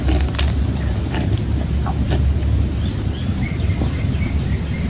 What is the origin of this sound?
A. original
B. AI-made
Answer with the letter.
A